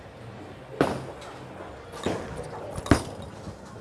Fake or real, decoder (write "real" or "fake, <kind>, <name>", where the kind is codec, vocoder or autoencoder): real